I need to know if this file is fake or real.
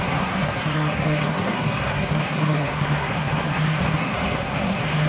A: fake